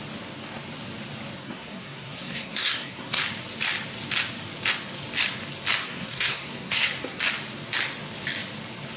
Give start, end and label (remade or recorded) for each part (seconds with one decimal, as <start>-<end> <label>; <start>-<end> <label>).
0.0-1.4 recorded; 1.4-3.2 remade; 3.2-5.8 recorded; 5.8-7.2 remade; 7.2-9.0 recorded